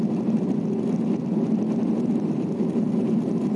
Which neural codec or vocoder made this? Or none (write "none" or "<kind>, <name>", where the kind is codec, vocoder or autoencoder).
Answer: none